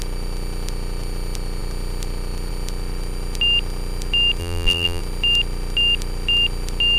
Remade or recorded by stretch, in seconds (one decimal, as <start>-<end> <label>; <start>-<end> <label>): 0.0-4.4 recorded; 4.4-5.0 remade; 5.0-7.0 recorded